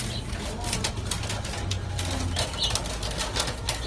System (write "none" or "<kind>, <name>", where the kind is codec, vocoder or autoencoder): none